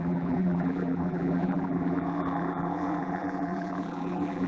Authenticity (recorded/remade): remade